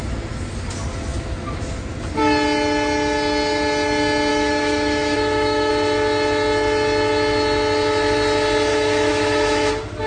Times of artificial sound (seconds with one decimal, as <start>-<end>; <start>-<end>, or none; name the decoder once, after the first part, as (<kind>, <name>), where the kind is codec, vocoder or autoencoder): 4.3-5.7 (autoencoder, DAC-VAE); 8.7-9.7